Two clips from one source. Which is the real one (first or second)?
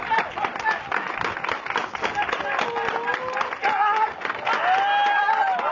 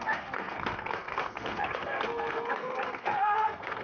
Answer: first